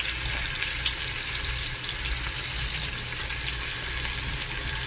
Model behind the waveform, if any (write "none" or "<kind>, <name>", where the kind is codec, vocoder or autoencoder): none